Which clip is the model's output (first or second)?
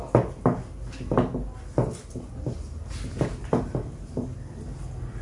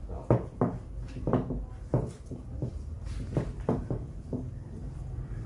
second